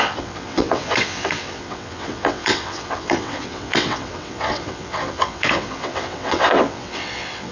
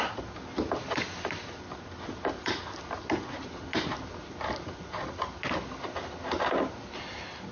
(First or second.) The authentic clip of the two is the second